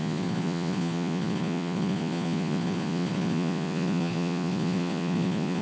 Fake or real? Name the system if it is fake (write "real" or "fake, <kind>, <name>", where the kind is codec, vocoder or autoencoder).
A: fake, vocoder, Vocos